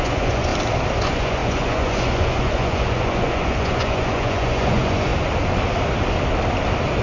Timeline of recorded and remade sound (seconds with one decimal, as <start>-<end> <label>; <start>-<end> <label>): 0.0-0.5 remade; 0.5-1.0 recorded; 1.0-5.1 remade; 5.1-7.0 recorded